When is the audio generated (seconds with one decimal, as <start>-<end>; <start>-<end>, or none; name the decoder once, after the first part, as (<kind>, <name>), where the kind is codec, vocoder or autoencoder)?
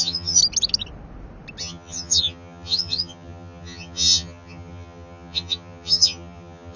0.0-0.4 (vocoder, HiFi-GAN); 1.6-6.8